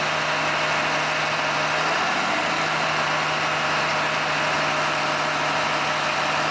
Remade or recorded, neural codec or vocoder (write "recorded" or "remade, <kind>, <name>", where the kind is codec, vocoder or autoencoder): recorded